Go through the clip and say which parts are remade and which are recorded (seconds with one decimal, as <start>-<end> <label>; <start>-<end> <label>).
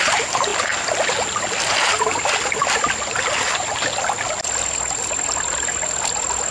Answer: 0.0-6.5 recorded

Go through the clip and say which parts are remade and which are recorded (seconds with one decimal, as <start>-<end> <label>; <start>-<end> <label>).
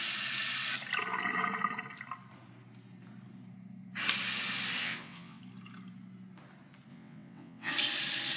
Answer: 0.0-4.8 recorded; 4.8-5.4 remade; 5.4-6.9 recorded; 6.9-7.7 remade; 7.7-8.4 recorded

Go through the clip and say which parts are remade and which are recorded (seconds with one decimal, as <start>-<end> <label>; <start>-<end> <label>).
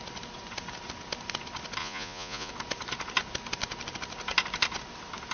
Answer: 0.0-1.8 recorded; 1.8-2.5 remade; 2.5-5.3 recorded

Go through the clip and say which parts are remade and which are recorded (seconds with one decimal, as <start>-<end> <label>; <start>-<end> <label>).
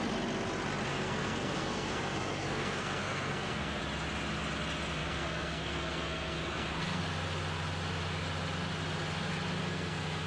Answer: 0.0-0.9 recorded; 0.9-3.8 remade; 3.8-5.0 recorded; 5.0-7.0 remade; 7.0-9.6 recorded; 9.6-10.3 remade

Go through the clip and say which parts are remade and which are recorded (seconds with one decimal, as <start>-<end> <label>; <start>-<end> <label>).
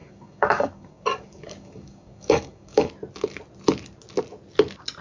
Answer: 0.0-2.9 remade; 2.9-5.0 recorded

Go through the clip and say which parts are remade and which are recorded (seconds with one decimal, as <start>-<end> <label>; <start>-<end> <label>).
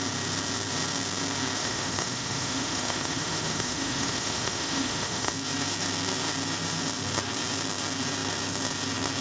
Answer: 0.0-1.6 recorded; 1.6-5.3 remade; 5.3-9.2 recorded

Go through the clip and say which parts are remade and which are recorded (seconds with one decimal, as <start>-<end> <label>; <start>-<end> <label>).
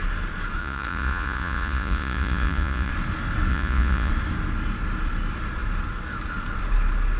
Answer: 0.0-0.6 recorded; 0.6-2.9 remade; 2.9-3.5 recorded; 3.5-4.1 remade; 4.1-7.2 recorded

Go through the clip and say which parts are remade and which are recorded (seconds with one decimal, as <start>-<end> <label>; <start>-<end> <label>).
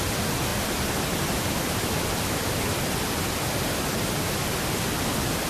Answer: 0.0-5.5 recorded